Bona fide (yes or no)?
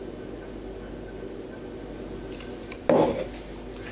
yes